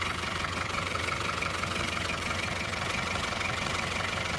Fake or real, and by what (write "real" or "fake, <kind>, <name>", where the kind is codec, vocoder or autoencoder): fake, vocoder, WaveNeXt